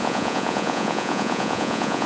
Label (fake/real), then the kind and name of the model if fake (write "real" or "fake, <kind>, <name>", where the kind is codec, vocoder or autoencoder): fake, vocoder, Vocos